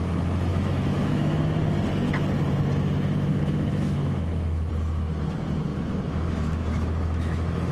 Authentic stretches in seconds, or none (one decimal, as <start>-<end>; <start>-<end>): 0.0-0.5; 1.4-3.3; 4.7-5.7